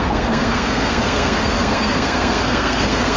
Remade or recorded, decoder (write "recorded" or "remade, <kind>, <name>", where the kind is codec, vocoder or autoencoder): remade, codec, SNAC